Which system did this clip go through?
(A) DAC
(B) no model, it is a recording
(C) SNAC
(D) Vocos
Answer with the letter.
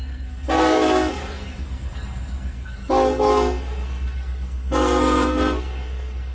C